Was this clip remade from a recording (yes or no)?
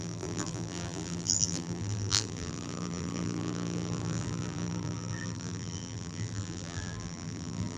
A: yes